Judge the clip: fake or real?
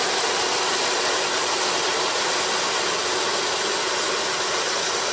real